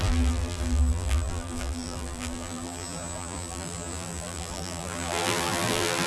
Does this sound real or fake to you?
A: fake